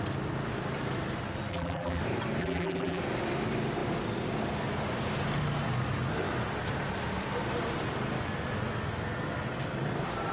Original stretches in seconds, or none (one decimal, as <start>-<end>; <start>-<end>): 0.0-1.5; 2.0-2.4; 3.0-10.3